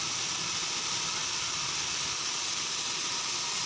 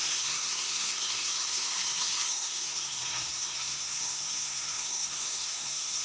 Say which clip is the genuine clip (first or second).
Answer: first